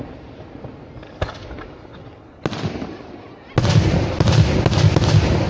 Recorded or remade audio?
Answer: recorded